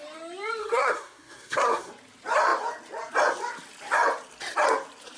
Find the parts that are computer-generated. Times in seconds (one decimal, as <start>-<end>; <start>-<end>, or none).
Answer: 0.6-1.9